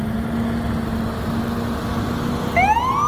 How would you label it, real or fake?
real